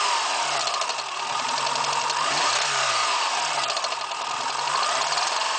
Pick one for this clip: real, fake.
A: fake